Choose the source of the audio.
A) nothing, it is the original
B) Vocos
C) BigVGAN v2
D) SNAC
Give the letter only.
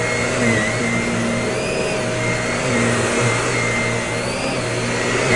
A